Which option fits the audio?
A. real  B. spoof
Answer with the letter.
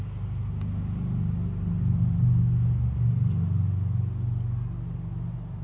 A